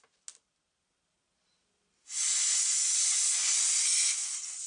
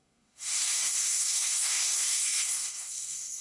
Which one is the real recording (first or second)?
first